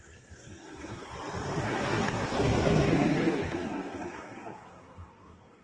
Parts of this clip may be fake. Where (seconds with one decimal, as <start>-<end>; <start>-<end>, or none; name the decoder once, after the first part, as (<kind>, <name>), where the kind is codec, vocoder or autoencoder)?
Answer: 0.0-1.1 (codec, SNAC); 1.6-5.6